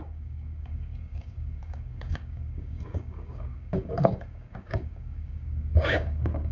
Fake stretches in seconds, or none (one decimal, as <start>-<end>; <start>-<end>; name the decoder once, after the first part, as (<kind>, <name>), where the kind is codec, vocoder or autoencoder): 0.0-6.5 (codec, DAC)